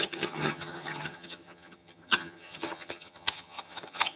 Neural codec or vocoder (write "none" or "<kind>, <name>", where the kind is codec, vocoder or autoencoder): vocoder, HiFi-GAN